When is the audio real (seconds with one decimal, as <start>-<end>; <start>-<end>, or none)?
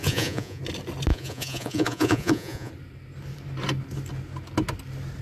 0.6-1.1; 2.7-5.2